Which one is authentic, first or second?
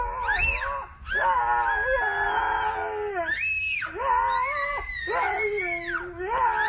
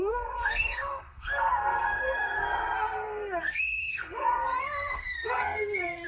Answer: first